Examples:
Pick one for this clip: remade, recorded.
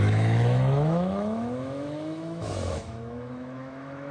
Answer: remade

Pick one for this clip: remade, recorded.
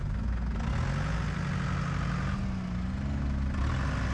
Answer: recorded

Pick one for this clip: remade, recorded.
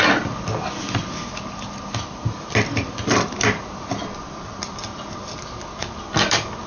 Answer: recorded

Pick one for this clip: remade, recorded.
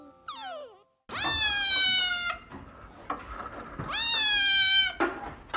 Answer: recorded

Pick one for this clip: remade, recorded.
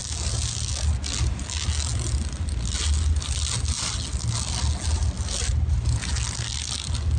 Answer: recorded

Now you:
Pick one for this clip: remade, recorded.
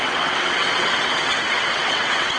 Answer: remade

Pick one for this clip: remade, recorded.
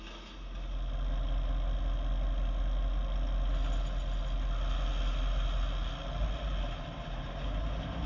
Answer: recorded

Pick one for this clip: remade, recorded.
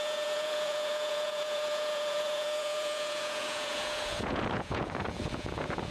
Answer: remade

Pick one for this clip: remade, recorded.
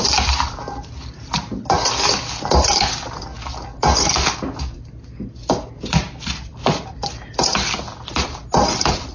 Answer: recorded